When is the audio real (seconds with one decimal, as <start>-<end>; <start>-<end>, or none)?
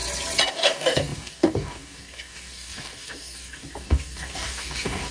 0.0-0.5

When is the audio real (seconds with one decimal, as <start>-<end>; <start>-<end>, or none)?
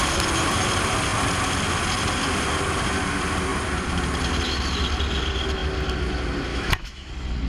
0.0-6.5; 7.1-7.5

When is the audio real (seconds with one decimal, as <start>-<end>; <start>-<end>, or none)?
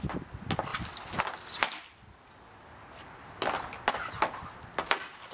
0.0-5.3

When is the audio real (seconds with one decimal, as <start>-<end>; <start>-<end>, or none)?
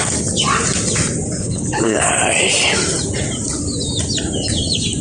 0.0-1.4; 2.1-5.0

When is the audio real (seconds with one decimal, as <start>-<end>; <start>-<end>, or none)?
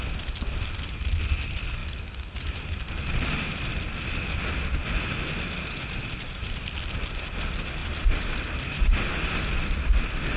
0.0-10.4